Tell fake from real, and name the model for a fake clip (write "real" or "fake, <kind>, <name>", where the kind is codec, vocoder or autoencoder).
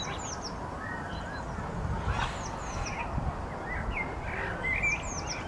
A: real